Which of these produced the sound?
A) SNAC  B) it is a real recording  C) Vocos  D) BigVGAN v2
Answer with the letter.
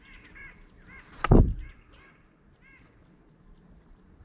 B